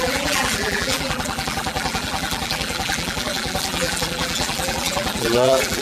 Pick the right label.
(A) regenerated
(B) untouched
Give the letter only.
A